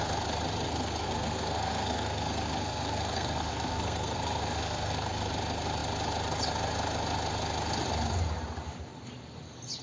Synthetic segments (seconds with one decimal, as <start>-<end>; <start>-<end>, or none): 0.7-5.3